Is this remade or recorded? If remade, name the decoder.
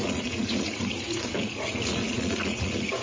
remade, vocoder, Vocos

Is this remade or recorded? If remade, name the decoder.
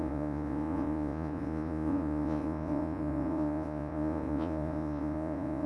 remade, vocoder, Vocos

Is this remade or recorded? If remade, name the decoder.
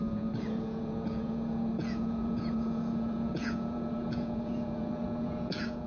remade, vocoder, Vocos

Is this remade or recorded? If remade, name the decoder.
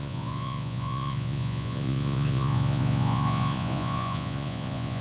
remade, vocoder, Vocos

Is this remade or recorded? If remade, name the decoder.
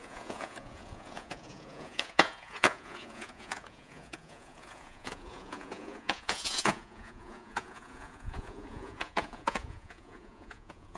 remade, vocoder, Vocos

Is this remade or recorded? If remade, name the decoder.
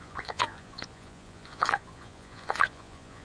remade, vocoder, Vocos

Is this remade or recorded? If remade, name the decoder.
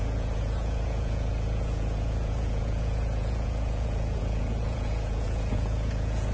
remade, vocoder, Vocos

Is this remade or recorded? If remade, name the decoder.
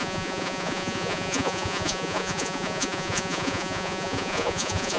remade, vocoder, Vocos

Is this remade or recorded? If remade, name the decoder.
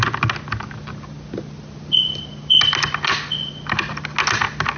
recorded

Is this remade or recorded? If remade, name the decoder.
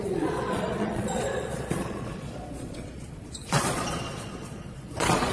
remade, vocoder, Vocos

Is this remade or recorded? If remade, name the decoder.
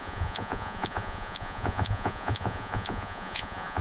remade, vocoder, Vocos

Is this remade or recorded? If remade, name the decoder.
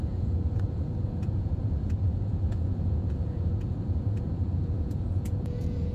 remade, vocoder, Vocos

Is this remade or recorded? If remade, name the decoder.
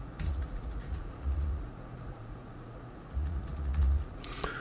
remade, vocoder, Vocos